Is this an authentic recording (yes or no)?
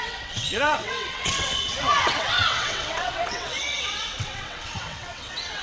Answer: no